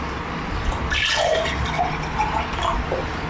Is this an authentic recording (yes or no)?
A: yes